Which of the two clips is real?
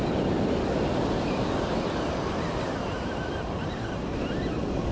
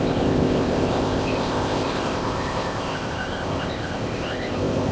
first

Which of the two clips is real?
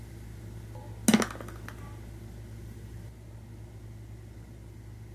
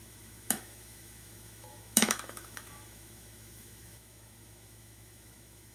first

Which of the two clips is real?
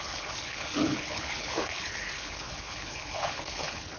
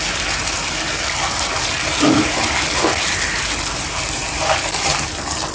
second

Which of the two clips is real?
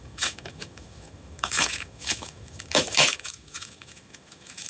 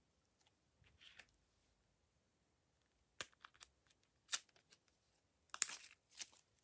second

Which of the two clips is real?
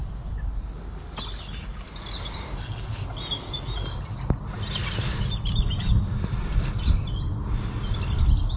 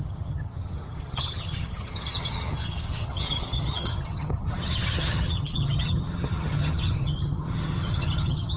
first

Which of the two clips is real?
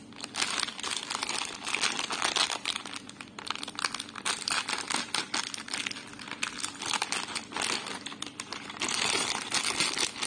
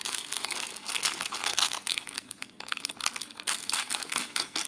first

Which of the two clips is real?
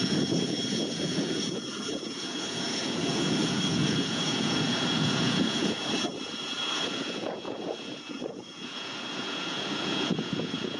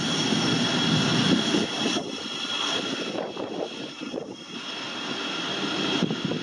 second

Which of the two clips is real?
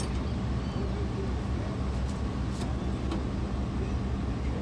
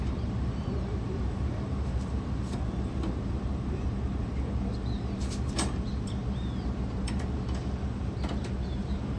first